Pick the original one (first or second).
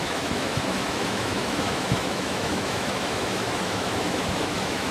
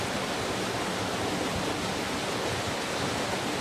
second